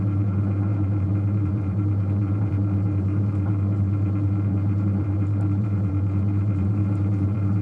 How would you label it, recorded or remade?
remade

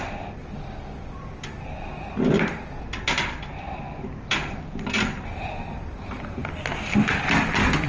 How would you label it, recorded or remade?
recorded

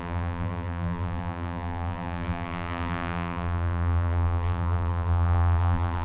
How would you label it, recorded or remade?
remade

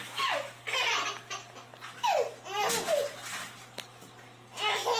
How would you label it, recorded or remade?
recorded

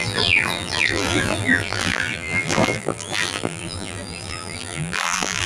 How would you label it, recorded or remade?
remade